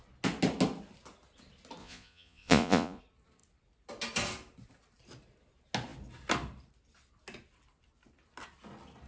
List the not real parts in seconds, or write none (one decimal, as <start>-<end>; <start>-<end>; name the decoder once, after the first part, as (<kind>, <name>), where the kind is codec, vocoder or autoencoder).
1.8-3.0 (vocoder, Vocos)

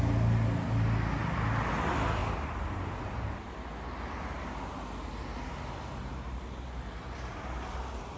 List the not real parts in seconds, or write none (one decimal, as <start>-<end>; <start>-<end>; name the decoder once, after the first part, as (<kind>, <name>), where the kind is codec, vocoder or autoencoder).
none

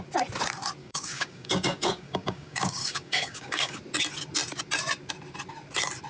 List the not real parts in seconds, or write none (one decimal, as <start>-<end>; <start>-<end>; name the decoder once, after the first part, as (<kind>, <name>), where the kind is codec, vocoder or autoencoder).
0.8-3.8 (codec, DAC)

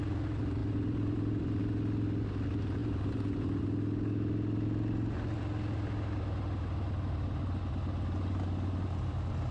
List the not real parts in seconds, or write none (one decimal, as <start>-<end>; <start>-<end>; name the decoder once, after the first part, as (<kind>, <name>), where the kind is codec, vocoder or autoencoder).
0.6-1.6 (vocoder, BigVGAN v2); 2.8-3.6

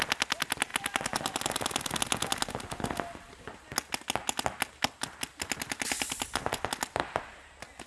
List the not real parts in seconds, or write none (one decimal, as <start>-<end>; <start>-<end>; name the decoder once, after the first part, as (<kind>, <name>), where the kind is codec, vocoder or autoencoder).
none